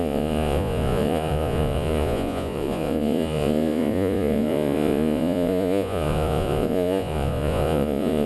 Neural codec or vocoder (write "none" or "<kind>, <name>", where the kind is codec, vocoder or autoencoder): vocoder, Vocos